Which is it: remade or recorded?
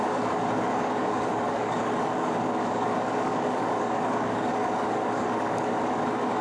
remade